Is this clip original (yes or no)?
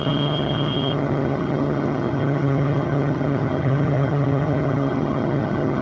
no